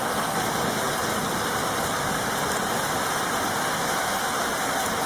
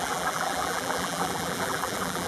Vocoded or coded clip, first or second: second